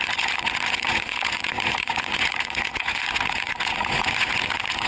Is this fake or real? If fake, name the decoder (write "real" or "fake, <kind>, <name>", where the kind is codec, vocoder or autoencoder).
fake, vocoder, Vocos